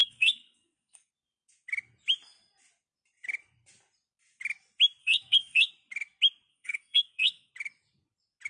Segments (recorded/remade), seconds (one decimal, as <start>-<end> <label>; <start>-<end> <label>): 0.0-1.1 remade; 1.1-5.0 recorded; 5.0-5.7 remade; 5.7-6.5 recorded; 6.5-7.5 remade; 7.5-8.5 recorded

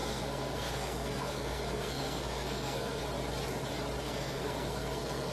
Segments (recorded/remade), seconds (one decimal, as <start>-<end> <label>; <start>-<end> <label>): 0.0-3.0 remade; 3.0-4.0 recorded; 4.0-5.3 remade